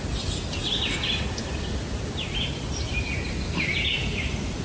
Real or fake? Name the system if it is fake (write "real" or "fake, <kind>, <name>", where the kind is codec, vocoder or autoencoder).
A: real